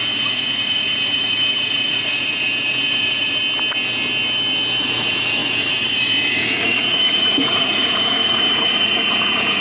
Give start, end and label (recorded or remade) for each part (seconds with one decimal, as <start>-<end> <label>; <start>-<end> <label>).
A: 0.0-3.4 remade; 3.4-4.8 recorded; 4.8-9.6 remade